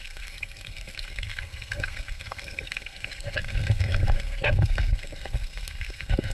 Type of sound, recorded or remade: remade